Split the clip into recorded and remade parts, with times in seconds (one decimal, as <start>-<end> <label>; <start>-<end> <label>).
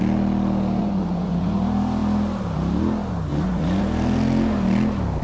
0.0-0.8 recorded; 0.8-1.6 remade; 1.6-3.3 recorded; 3.3-3.8 remade; 3.8-5.2 recorded